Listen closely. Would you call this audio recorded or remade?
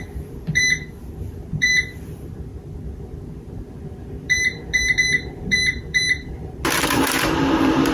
remade